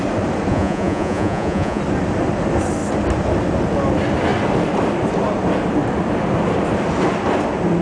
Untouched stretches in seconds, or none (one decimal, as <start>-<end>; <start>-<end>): 0.0-0.5; 1.8-7.8